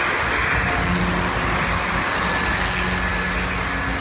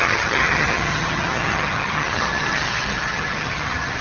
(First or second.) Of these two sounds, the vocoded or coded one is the second